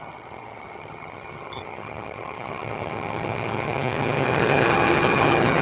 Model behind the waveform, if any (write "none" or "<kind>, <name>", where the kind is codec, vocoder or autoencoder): vocoder, HiFi-GAN